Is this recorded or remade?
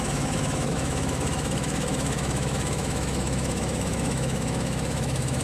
remade